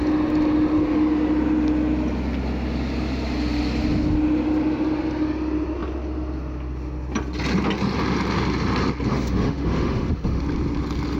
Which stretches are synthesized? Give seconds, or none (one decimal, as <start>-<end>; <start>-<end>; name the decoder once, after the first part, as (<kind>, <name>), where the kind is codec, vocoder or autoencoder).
9.1-10.4 (autoencoder, DAC-VAE)